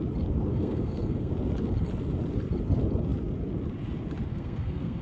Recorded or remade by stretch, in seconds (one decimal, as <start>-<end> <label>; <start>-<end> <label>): 0.0-0.5 recorded; 0.5-1.3 remade; 1.3-4.3 recorded; 4.3-5.0 remade